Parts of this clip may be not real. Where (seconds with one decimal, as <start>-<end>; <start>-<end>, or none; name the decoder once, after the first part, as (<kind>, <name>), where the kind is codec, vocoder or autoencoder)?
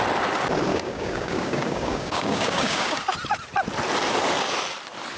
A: 0.7-3.0 (codec, DAC)